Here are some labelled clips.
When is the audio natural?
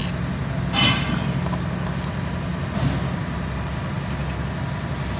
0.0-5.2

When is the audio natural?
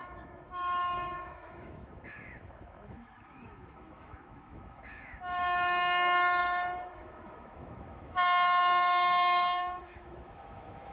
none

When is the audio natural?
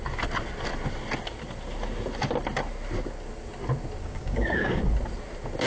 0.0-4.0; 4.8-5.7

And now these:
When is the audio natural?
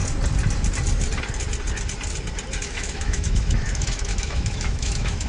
0.0-2.6